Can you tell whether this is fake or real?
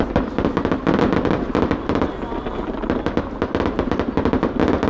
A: real